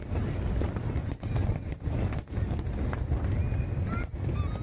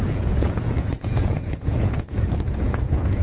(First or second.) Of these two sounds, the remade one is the second